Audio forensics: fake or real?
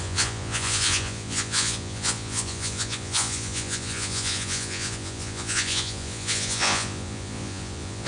fake